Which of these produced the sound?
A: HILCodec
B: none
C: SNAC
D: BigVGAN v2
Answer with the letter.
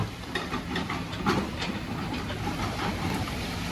D